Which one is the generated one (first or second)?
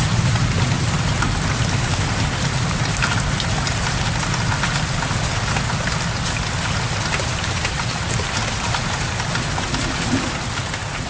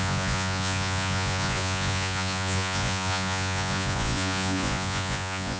second